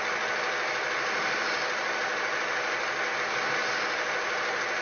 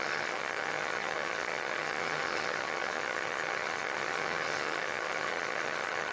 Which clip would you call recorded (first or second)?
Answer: first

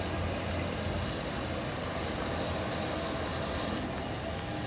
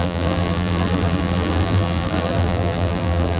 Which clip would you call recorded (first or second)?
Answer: first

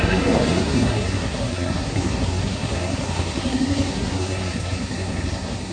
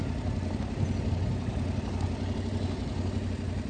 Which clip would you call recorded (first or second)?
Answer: second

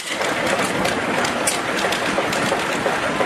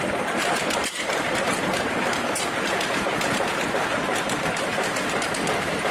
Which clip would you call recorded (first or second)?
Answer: first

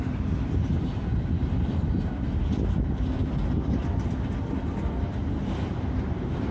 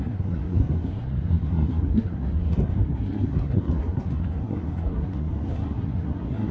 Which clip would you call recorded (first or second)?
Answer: first